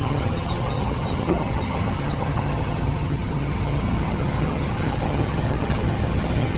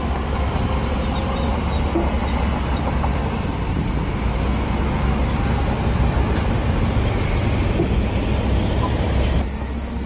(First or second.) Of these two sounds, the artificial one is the first